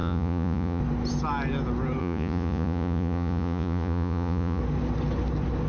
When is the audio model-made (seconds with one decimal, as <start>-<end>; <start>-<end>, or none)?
0.0-0.8; 2.0-4.6

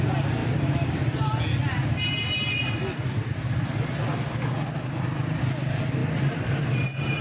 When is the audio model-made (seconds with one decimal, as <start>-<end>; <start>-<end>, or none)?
none

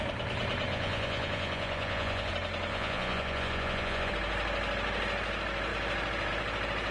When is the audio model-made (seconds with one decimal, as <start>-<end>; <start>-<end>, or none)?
0.7-2.3; 2.7-4.1

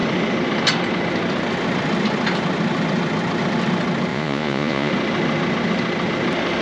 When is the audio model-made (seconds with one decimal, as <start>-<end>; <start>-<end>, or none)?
4.1-4.9

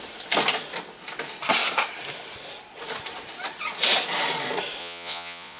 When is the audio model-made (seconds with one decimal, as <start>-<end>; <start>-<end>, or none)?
4.8-5.6